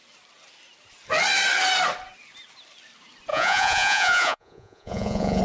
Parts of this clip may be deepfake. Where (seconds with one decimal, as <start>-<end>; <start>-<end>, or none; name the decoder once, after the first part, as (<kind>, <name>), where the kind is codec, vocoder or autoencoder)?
3.3-5.4 (vocoder, Vocos)